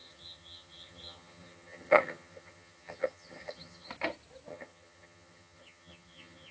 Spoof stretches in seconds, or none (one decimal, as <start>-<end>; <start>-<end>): 0.0-3.9; 4.5-6.5